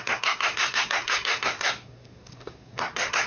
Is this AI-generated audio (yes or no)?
yes